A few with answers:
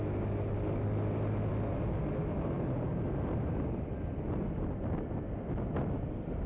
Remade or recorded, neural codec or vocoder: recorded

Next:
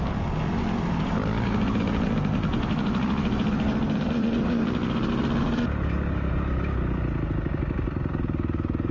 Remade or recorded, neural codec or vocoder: recorded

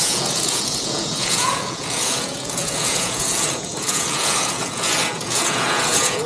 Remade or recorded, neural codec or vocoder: remade, vocoder, Vocos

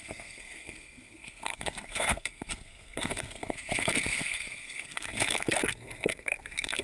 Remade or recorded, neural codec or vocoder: remade, codec, SNAC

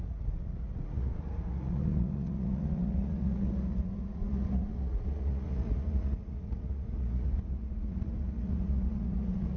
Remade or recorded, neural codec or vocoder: remade, vocoder, Vocos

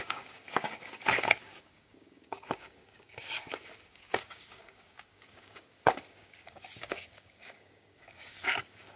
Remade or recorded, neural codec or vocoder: remade, codec, DAC